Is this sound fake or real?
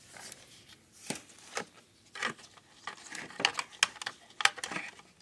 real